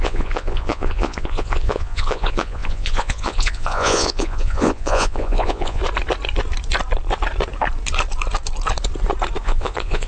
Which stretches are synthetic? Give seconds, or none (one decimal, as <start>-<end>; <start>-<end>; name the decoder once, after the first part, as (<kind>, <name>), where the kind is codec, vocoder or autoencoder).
0.0-5.8 (vocoder, Vocos); 9.4-10.1